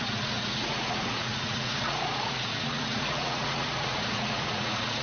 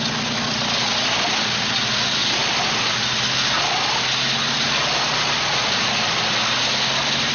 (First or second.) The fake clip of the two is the first